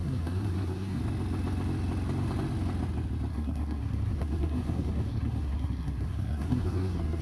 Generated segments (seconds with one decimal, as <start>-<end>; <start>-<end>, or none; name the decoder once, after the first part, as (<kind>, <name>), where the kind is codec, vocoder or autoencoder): 0.0-1.0 (codec, SNAC); 3.3-7.2